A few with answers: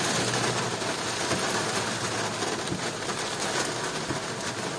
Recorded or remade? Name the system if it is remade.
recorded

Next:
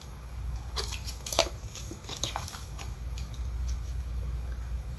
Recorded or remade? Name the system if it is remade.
remade, codec, DAC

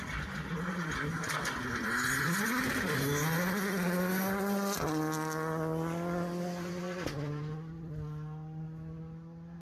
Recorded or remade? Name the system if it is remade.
recorded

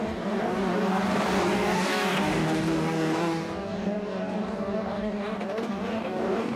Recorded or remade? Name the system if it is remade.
remade, codec, DAC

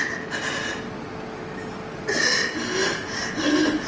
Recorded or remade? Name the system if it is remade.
recorded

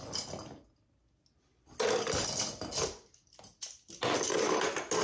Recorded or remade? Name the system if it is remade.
recorded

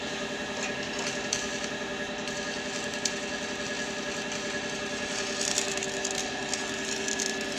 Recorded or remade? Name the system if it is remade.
recorded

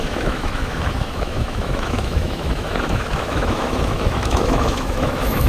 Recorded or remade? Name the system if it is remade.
remade, autoencoder, DAC-VAE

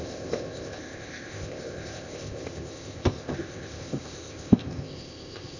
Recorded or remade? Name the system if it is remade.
remade, codec, ZipCodec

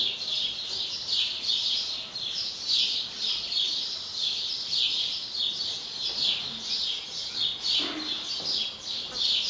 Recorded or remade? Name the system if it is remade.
recorded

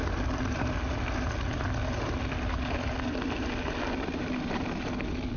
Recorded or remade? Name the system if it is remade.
recorded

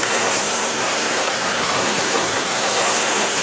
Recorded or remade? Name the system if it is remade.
remade, codec, SNAC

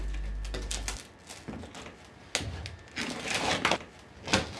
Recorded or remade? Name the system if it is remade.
recorded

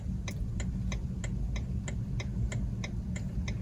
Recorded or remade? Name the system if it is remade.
recorded